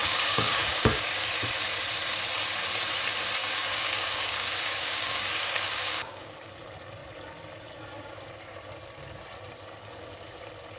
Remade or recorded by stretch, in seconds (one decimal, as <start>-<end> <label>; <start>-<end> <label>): 0.0-1.3 remade; 1.3-3.4 recorded; 3.4-6.5 remade; 6.5-10.8 recorded